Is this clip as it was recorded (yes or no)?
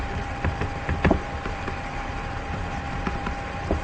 no